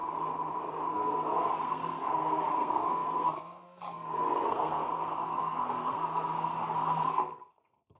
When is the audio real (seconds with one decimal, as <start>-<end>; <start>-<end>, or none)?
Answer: 0.0-0.9

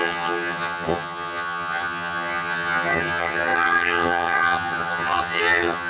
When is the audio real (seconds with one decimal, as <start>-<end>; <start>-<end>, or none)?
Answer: none

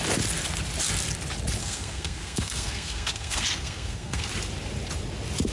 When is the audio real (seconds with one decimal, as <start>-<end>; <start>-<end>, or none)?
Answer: 0.0-1.6; 4.3-5.5

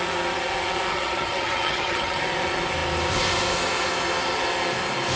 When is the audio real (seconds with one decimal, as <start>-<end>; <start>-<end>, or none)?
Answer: 0.0-0.9; 2.2-5.2

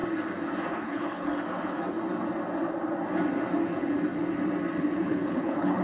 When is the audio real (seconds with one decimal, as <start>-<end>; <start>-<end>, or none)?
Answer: 0.0-0.7; 1.3-4.8

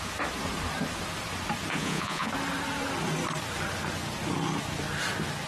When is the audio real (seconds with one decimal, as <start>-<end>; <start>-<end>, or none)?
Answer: 0.0-1.8; 2.3-5.5

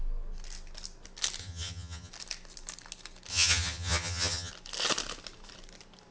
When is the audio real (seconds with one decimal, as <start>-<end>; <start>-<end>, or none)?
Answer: 0.0-1.4; 2.1-3.3; 4.5-6.1